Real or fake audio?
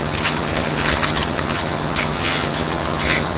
fake